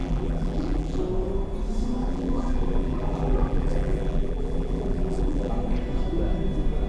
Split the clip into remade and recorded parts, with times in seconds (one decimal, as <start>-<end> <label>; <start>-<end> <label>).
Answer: 0.0-1.0 remade; 1.0-2.0 recorded; 2.0-5.5 remade; 5.5-6.9 recorded